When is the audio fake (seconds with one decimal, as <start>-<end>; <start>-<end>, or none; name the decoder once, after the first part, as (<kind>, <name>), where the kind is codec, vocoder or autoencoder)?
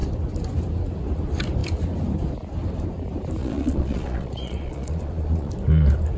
3.4-5.5 (vocoder, Vocos)